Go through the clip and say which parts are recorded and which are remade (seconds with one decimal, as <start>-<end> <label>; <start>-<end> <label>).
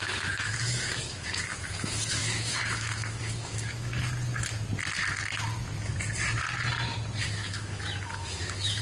0.0-3.9 remade; 3.9-7.2 recorded; 7.2-8.8 remade